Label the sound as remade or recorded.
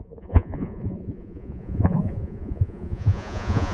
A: remade